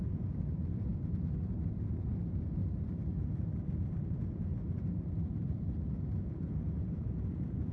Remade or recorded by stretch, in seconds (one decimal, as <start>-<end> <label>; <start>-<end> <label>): 0.0-0.9 remade; 0.9-1.8 recorded; 1.8-2.6 remade; 2.6-4.0 recorded; 4.0-4.5 remade; 4.5-6.2 recorded; 6.2-7.7 remade